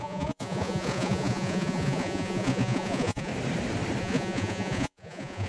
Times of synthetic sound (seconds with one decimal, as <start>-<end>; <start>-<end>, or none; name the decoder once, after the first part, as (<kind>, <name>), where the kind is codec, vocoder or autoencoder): 0.0-3.3 (vocoder, Vocos); 4.0-5.5